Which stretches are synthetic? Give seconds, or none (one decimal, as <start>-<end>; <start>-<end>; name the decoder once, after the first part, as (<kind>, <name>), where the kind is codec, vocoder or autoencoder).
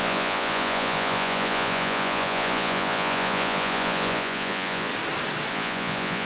0.0-4.9 (vocoder, Vocos); 5.5-6.3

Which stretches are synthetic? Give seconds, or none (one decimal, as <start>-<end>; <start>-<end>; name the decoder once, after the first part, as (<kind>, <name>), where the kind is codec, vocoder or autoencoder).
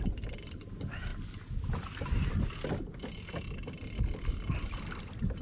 none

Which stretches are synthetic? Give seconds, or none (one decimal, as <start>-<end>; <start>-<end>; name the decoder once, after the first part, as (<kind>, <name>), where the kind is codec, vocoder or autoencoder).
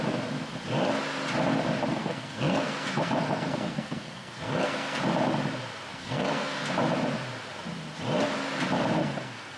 1.9-5.0 (codec, SNAC); 5.9-6.7; 9.0-9.6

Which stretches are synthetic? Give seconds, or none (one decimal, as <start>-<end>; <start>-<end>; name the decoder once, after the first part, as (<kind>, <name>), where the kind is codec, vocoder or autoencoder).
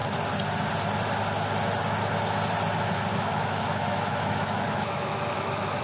3.1-5.8 (autoencoder, DAC-VAE)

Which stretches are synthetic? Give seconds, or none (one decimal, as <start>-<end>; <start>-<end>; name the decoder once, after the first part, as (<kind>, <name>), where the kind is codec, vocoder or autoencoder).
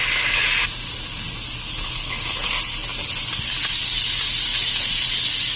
1.6-2.5 (codec, HILCodec)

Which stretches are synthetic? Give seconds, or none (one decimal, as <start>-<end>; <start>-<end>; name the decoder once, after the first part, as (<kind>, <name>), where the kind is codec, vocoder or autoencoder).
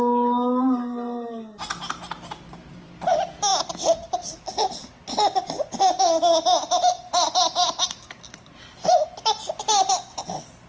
none